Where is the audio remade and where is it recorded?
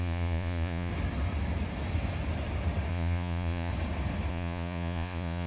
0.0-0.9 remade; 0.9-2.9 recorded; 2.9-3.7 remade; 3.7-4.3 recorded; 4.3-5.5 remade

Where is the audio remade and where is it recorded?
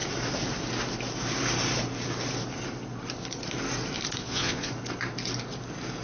0.0-4.2 recorded; 4.2-4.7 remade; 4.7-6.0 recorded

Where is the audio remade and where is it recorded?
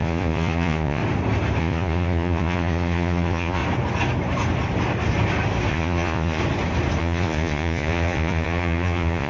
0.0-1.0 remade; 1.0-1.6 recorded; 1.6-3.6 remade; 3.6-5.7 recorded; 5.7-6.4 remade; 6.4-7.0 recorded; 7.0-9.3 remade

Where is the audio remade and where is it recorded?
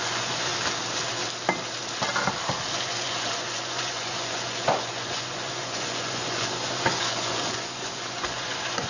0.0-0.5 remade; 0.5-2.7 recorded; 2.7-8.9 remade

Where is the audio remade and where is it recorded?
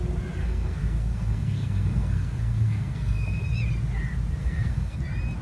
0.0-0.4 recorded; 0.4-3.4 remade; 3.4-4.4 recorded; 4.4-5.0 remade; 5.0-5.4 recorded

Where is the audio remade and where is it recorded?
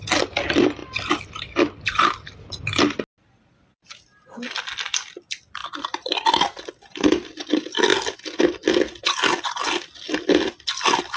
0.0-11.2 recorded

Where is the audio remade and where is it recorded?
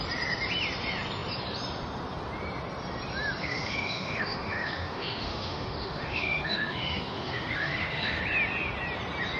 0.0-3.4 recorded; 3.4-8.2 remade; 8.2-9.4 recorded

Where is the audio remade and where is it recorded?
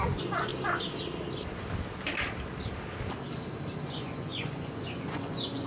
0.0-0.5 remade; 0.5-3.9 recorded; 3.9-5.7 remade